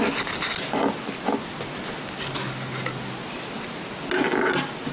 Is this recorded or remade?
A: recorded